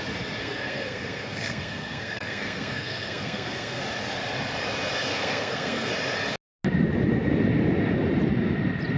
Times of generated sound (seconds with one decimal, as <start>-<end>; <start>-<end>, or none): 0.4-3.8; 5.1-5.9